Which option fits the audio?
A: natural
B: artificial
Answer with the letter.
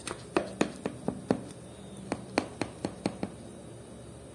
A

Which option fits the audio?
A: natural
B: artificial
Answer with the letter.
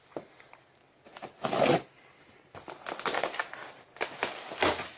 A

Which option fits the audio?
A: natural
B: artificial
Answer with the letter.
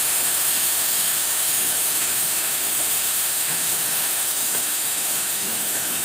B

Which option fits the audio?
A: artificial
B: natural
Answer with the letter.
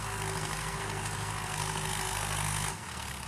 A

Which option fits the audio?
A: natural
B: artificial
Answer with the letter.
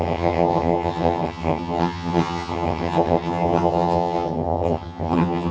B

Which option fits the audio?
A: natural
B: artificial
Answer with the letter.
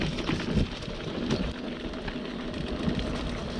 A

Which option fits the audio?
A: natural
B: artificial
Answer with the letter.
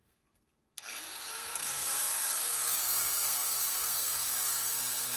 B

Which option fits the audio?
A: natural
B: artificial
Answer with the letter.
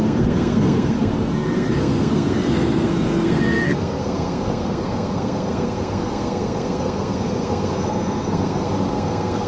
B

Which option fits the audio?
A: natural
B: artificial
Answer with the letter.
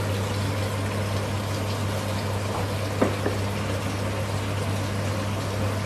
A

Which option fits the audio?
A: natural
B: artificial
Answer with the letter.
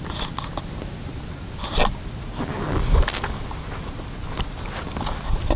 A